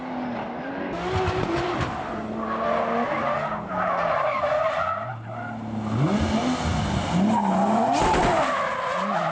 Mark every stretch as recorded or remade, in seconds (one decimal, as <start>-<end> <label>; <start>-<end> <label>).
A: 0.0-9.3 recorded